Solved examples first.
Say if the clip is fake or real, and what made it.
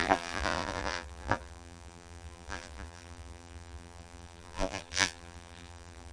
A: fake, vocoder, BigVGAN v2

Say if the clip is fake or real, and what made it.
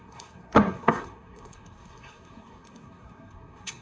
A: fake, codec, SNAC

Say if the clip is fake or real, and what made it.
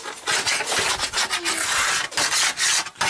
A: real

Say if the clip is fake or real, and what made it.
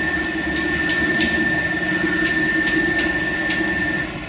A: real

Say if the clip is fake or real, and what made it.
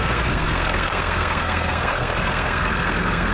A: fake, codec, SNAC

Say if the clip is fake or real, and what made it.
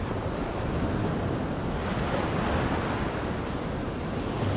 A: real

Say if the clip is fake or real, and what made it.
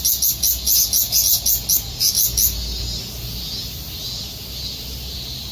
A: real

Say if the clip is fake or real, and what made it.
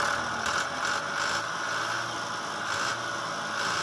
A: real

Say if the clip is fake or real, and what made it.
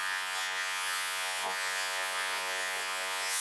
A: fake, vocoder, Vocos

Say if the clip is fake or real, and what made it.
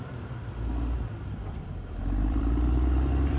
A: fake, vocoder, BigVGAN v2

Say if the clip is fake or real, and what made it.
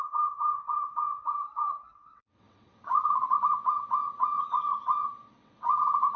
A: fake, vocoder, WaveNeXt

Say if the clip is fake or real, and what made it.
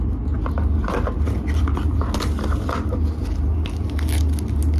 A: real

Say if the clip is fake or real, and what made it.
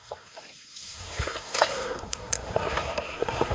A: fake, codec, SNAC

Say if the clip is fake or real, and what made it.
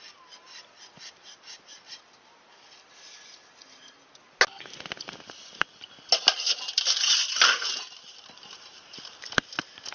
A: real